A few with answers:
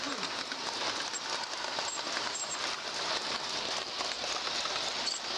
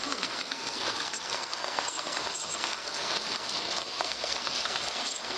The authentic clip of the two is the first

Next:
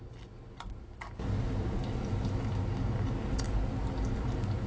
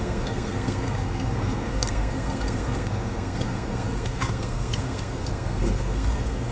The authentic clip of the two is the first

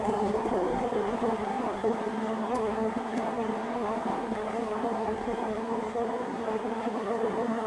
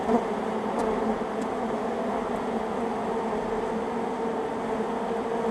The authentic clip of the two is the second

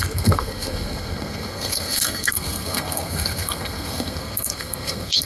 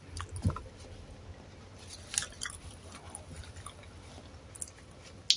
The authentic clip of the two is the second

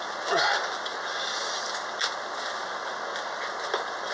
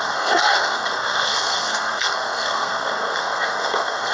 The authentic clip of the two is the first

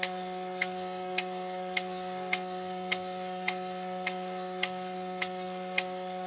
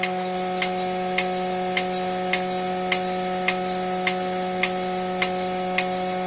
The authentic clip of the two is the second